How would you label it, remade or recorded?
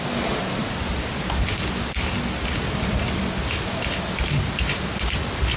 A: recorded